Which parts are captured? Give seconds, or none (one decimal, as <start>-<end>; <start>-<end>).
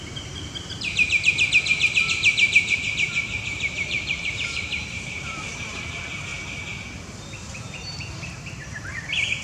6.3-7.6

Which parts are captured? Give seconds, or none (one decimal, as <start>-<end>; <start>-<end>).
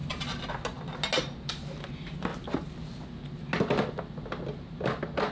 0.0-5.3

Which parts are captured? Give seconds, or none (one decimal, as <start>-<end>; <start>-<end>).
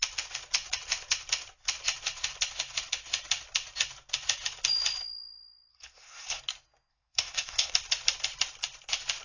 0.0-5.7; 6.4-6.9; 7.7-9.2